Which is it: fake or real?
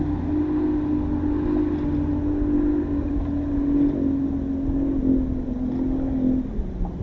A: real